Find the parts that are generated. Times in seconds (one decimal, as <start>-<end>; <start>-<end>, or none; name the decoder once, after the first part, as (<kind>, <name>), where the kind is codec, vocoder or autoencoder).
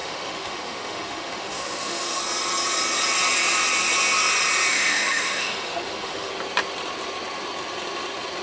0.0-2.2 (autoencoder, DAC-VAE); 4.7-6.3